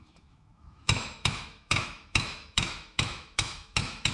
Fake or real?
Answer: fake